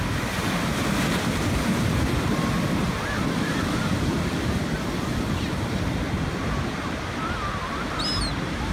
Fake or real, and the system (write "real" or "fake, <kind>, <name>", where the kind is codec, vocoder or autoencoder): real